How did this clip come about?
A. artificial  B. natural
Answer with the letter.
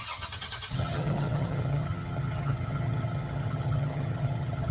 A